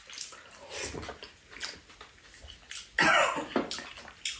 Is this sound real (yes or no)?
yes